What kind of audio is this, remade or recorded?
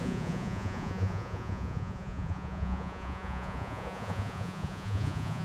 remade